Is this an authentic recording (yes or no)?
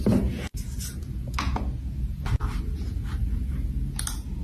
yes